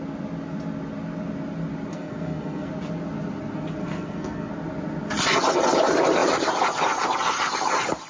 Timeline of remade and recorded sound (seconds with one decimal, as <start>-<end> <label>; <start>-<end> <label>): 0.0-1.9 recorded; 1.9-2.7 remade; 2.7-3.8 recorded; 3.8-4.5 remade; 4.5-8.1 recorded